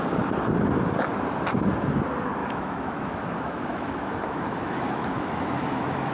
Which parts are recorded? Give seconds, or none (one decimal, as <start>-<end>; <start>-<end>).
0.0-2.4